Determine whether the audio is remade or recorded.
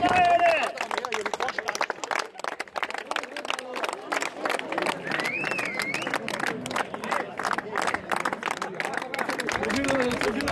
recorded